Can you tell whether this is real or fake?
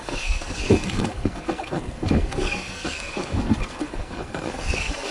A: fake